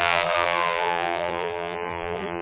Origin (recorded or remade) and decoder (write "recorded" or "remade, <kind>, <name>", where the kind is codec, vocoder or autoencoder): remade, vocoder, BigVGAN v2